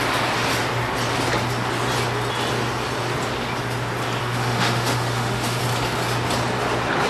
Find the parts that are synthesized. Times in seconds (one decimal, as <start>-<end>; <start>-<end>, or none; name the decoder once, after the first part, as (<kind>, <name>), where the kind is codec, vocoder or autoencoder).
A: 4.2-5.6 (autoencoder, DAC-VAE)